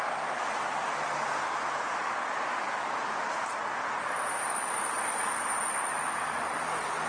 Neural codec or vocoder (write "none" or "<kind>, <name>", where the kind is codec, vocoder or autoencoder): none